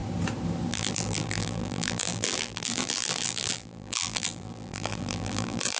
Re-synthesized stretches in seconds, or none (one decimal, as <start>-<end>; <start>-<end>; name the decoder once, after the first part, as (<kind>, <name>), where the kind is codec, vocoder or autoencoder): 0.7-5.8 (vocoder, BigVGAN v2)